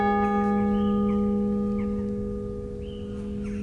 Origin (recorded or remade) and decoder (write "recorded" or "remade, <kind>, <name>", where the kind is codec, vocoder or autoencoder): recorded